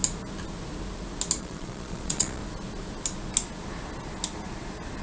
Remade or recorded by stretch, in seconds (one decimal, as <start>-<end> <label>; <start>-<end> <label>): 0.0-1.4 recorded; 1.4-2.4 remade; 2.4-5.0 recorded